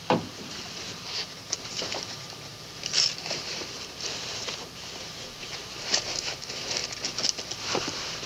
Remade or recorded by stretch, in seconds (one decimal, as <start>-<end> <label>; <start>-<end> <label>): 0.0-6.8 remade; 6.8-7.8 recorded; 7.8-8.3 remade